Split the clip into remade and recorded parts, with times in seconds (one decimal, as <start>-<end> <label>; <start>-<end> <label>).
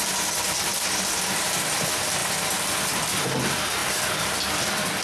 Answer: 0.0-2.2 recorded; 2.2-3.2 remade; 3.2-3.8 recorded; 3.8-5.0 remade